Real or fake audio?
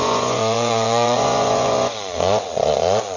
fake